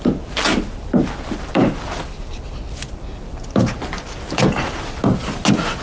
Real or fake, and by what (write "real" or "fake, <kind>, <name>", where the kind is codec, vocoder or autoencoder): real